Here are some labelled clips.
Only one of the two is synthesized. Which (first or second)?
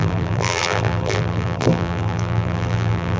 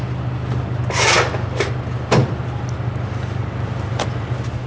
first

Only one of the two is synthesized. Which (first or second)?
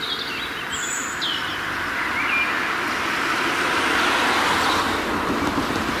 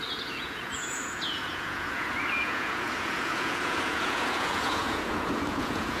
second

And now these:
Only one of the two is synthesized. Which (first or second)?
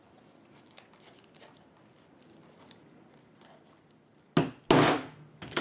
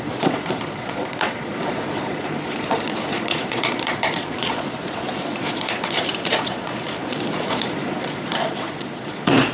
second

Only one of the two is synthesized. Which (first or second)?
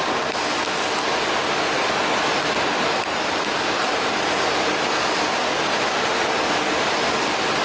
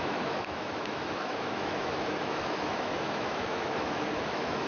second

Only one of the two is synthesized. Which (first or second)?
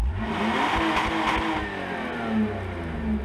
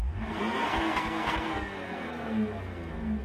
second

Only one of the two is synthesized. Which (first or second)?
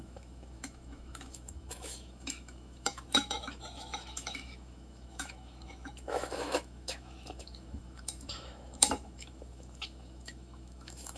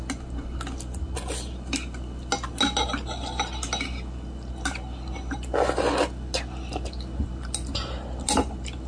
first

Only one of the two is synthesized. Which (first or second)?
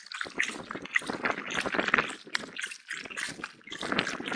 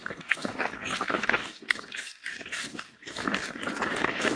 second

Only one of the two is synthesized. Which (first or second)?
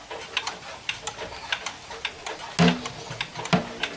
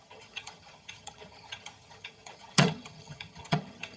second